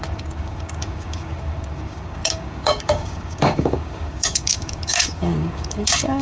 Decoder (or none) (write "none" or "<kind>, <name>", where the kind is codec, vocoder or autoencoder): codec, DAC